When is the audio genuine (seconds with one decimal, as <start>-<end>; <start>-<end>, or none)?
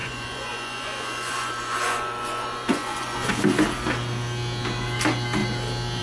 3.3-6.0